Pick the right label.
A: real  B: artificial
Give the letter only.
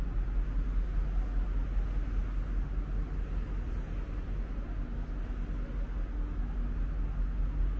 A